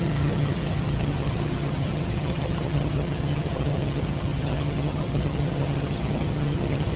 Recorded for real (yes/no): no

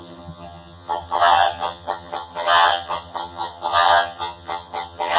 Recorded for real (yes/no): no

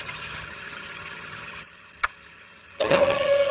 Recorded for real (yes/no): no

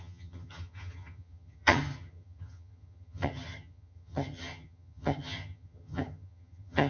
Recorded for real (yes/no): no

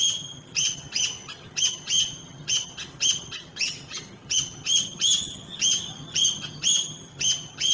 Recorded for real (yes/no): no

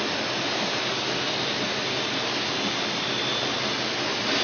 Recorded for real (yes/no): yes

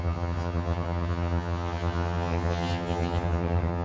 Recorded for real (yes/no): no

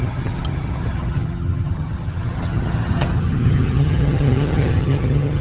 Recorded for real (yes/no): no